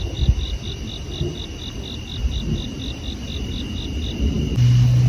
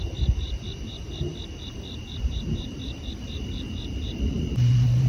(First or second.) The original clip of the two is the first